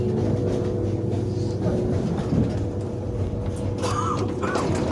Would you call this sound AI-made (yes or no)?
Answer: no